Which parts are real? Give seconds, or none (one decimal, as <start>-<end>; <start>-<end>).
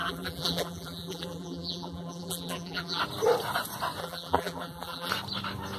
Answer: 3.0-4.0; 5.1-5.8